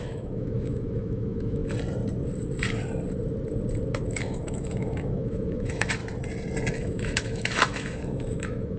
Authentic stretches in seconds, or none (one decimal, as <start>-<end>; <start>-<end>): 1.6-3.9; 6.0-6.7